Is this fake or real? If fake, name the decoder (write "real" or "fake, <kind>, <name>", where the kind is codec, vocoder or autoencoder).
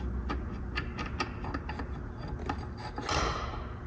real